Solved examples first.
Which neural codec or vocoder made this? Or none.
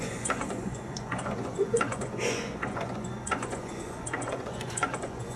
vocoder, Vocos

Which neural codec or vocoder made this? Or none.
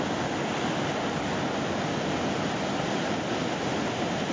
none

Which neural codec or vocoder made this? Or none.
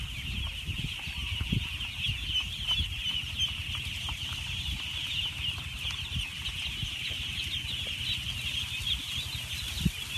none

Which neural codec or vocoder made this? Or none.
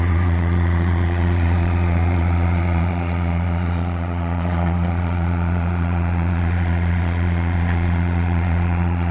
vocoder, Vocos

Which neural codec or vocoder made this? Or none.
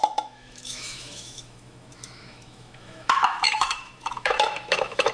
autoencoder, DAC-VAE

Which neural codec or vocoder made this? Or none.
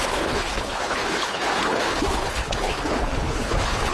codec, HILCodec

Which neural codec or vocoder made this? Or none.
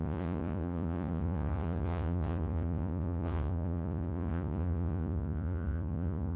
vocoder, Vocos